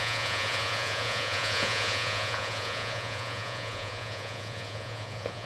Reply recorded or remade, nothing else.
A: remade